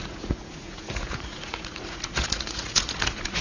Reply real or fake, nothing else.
fake